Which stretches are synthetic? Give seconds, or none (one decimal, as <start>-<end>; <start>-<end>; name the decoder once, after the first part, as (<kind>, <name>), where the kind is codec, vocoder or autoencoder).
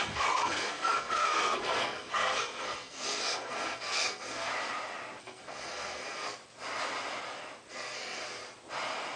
0.0-4.5 (codec, SNAC); 5.2-6.4; 7.7-8.2